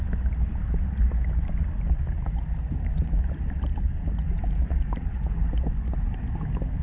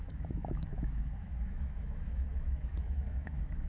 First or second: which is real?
first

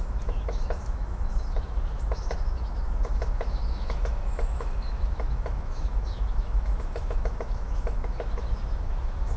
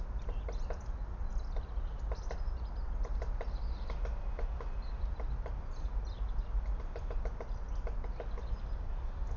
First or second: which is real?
second